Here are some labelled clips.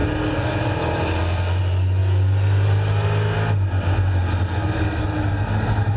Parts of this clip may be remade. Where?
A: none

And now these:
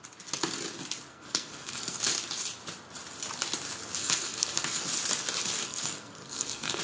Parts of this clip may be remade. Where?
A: 1.1-2.0 (codec, SNAC); 4.0-4.8; 5.6-6.8

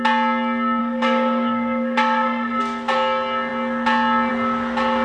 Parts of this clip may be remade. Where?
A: 0.8-2.6 (codec, SNAC)

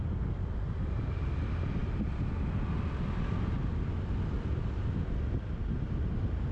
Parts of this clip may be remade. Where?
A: none

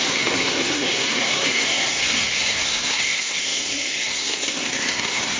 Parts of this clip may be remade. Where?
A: 0.0-5.4 (codec, SNAC)

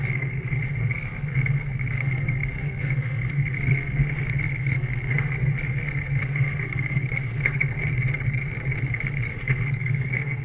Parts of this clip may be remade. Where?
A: 0.0-7.8 (codec, SNAC); 8.8-10.4

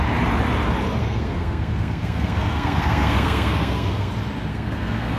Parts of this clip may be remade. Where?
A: 1.0-4.1 (codec, SNAC); 4.5-5.2